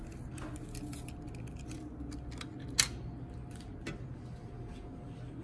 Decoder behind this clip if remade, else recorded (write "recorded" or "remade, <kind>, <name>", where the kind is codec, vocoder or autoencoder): recorded